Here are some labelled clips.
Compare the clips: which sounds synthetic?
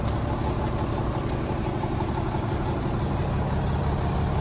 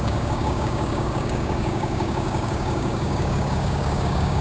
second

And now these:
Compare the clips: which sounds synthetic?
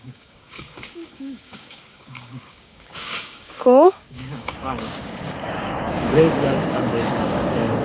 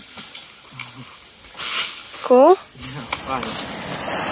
first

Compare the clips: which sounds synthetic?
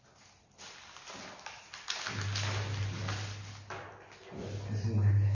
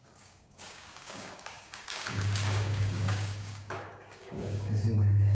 second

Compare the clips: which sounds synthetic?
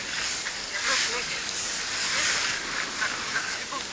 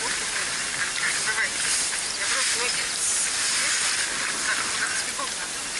first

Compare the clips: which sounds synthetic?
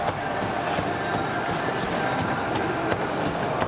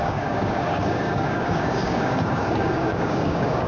second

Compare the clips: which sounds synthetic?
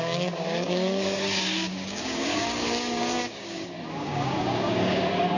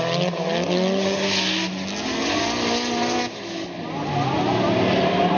first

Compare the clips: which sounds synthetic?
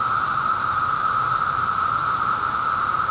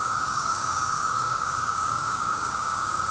second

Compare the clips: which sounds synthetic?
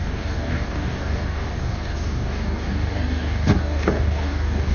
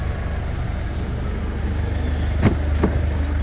first